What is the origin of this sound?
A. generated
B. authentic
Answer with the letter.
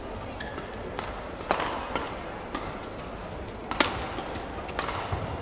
B